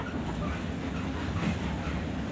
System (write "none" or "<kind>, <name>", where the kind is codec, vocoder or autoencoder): none